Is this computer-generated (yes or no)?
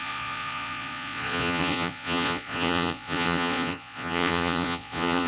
yes